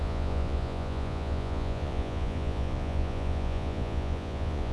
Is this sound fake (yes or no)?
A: yes